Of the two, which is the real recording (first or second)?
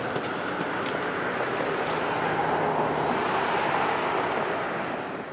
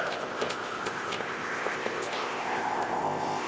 first